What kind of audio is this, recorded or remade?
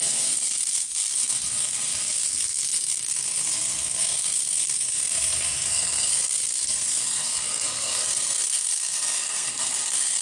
remade